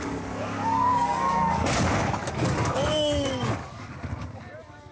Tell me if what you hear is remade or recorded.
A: remade